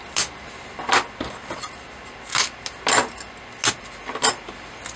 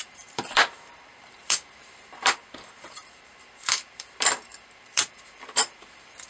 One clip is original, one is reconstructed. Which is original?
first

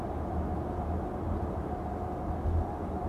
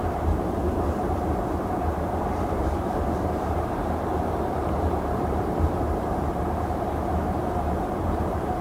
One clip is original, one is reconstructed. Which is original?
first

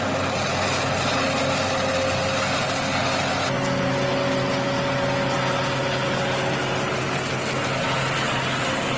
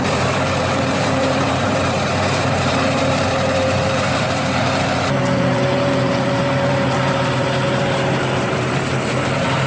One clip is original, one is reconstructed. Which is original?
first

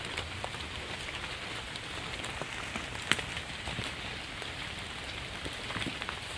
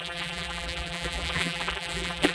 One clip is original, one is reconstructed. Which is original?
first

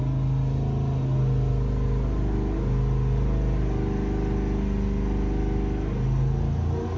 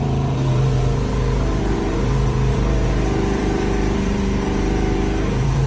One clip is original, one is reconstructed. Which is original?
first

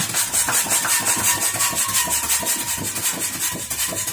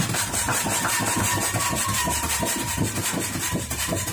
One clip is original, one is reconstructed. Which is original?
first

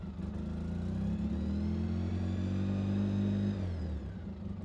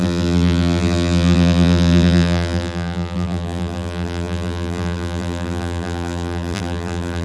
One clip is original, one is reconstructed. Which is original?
first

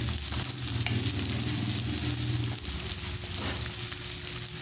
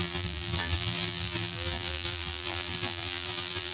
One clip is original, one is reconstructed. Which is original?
first